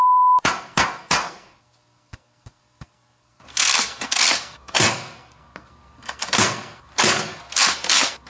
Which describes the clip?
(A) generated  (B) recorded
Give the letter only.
A